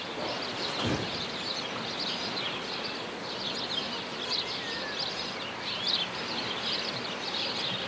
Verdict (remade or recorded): recorded